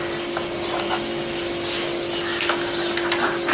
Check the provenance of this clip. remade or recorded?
recorded